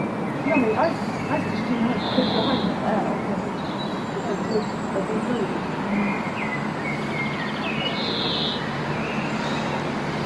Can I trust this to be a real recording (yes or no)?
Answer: yes